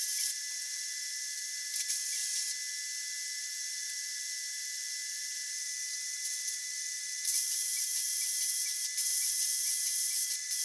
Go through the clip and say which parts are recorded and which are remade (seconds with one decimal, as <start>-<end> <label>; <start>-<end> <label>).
0.0-2.2 remade; 2.2-3.4 recorded; 3.4-10.6 remade